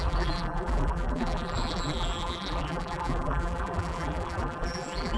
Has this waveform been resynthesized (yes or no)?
yes